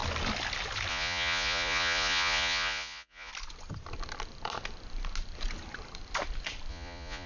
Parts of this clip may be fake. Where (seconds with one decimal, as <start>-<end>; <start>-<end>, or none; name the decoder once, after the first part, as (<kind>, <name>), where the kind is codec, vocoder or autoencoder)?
0.9-3.3 (vocoder, Vocos); 6.7-7.3